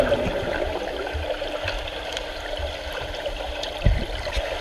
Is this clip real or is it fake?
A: real